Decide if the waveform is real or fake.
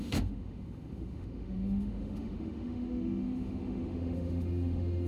fake